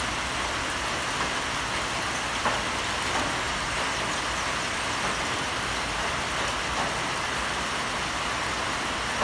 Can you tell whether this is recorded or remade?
recorded